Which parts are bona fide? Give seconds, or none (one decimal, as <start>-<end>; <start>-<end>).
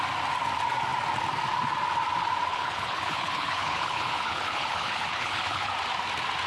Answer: 0.0-2.5; 5.7-6.5